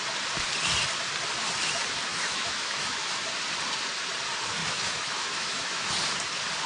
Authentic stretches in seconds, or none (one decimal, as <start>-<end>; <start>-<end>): 0.0-2.1; 3.3-4.6; 5.9-6.7